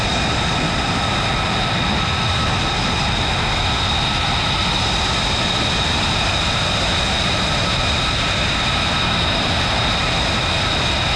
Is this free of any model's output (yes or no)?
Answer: yes